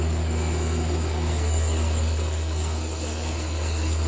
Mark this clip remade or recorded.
remade